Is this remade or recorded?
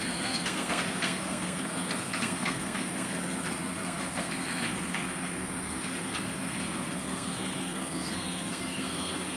remade